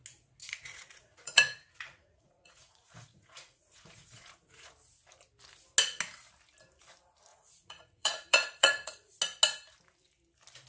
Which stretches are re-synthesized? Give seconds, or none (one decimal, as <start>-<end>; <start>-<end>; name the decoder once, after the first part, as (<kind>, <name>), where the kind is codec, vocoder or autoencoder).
0.4-4.7 (vocoder, Vocos); 7.3-9.2